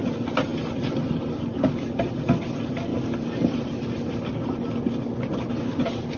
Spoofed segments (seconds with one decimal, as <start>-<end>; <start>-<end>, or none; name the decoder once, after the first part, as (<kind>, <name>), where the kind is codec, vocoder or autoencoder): none